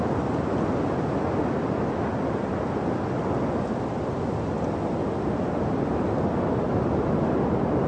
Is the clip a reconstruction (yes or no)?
no